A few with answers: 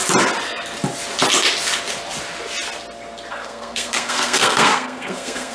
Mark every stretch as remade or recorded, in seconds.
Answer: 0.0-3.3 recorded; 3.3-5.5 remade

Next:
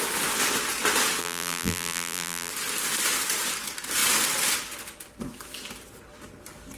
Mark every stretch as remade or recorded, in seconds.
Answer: 0.0-1.2 recorded; 1.2-2.5 remade; 2.5-6.8 recorded

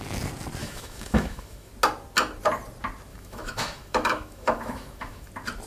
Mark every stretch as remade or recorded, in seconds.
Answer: 0.0-0.6 recorded; 0.6-1.7 remade; 1.7-3.1 recorded; 3.1-5.3 remade; 5.3-5.7 recorded